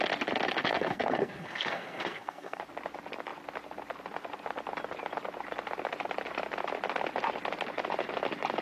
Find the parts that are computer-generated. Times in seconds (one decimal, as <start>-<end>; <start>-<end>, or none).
0.7-2.6